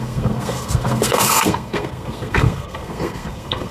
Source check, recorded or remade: remade